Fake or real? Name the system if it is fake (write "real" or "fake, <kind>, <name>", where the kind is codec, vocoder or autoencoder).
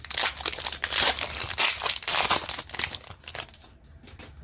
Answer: real